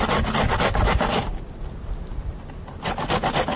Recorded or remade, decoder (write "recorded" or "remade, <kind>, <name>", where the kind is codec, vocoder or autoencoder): recorded